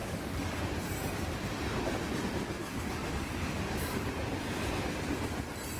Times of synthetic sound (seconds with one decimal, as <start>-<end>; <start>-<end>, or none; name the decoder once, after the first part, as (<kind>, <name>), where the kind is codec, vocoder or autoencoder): 0.0-0.6 (codec, DAC); 2.6-4.1

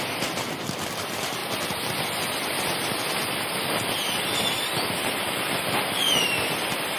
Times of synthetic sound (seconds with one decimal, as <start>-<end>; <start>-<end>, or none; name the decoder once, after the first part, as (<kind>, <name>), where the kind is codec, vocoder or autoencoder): 0.0-1.4 (vocoder, BigVGAN v2); 3.1-7.0

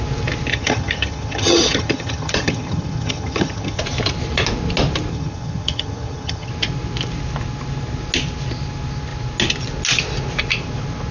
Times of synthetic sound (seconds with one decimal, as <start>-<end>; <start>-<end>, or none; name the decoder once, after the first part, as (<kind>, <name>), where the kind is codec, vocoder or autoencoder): 0.5-3.8 (vocoder, HiFi-GAN); 5.1-6.5

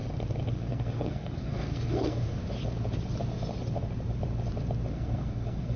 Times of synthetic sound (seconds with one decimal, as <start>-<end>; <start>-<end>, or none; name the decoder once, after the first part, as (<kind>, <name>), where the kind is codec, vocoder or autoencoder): 0.5-2.4 (codec, SNAC); 4.9-5.8

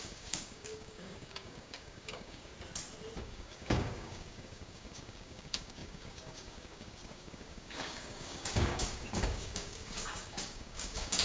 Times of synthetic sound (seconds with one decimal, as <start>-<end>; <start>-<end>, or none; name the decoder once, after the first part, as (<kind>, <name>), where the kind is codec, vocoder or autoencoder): 0.0-2.5 (codec, DAC); 3.2-11.2